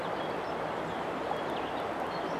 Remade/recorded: recorded